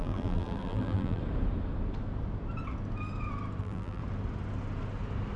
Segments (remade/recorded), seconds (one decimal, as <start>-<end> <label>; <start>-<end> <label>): 0.0-1.2 remade; 1.2-3.6 recorded; 3.6-4.0 remade; 4.0-5.4 recorded